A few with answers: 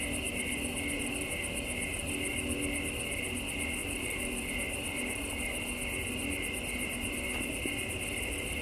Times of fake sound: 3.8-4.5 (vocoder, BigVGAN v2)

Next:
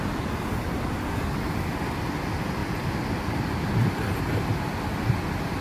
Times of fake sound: none